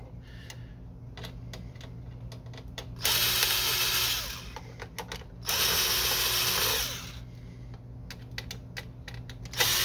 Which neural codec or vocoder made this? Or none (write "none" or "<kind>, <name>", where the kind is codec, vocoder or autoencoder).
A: none